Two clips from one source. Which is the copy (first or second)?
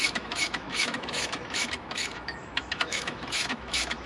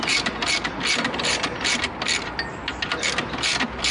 first